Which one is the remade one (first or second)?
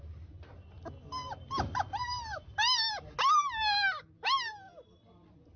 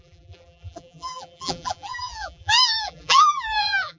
second